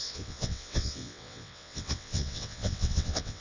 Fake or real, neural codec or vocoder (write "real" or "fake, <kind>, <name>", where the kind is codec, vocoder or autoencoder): fake, vocoder, WaveNeXt